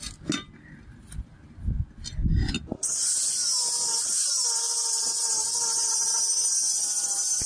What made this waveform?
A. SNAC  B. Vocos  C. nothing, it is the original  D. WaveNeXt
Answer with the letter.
C